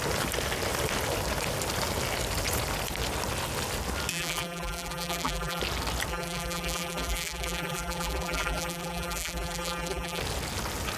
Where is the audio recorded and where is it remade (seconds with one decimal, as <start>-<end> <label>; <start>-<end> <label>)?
0.0-4.1 recorded; 4.1-5.6 remade; 5.6-6.1 recorded; 6.1-10.2 remade; 10.2-11.0 recorded

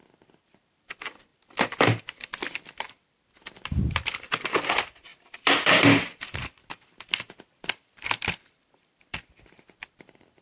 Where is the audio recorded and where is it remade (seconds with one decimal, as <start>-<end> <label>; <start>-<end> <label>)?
0.0-10.4 remade